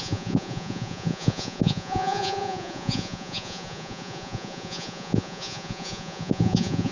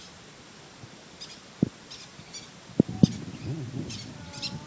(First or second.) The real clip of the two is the second